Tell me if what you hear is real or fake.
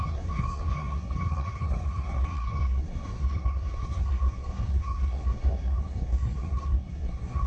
fake